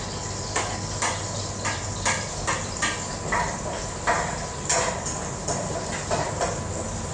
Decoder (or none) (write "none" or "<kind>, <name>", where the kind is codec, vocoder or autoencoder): none